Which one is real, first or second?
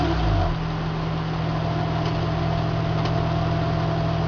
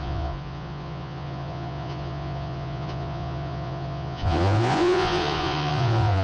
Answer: first